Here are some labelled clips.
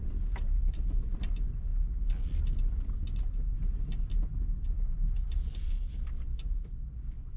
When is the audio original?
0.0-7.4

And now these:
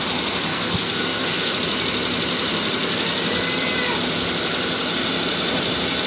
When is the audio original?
0.0-0.5; 1.5-6.1

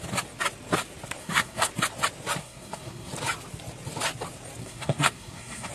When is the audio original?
0.0-1.2; 1.7-2.4; 3.1-4.6

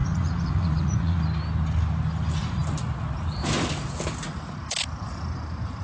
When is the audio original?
1.2-5.8